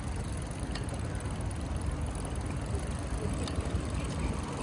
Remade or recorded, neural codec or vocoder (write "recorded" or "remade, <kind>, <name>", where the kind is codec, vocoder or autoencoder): recorded